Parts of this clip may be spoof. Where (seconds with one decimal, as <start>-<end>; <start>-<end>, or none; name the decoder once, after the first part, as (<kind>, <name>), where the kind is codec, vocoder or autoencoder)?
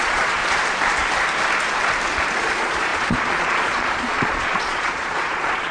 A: 0.0-0.4 (vocoder, Vocos); 2.4-5.7